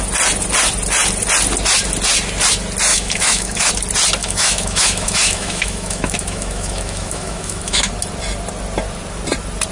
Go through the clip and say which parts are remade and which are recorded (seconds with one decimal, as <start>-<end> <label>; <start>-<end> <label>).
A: 0.0-2.9 recorded; 2.9-3.7 remade; 3.7-4.2 recorded; 4.2-7.9 remade; 7.9-9.7 recorded